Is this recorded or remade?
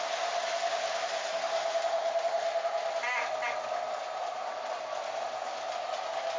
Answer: recorded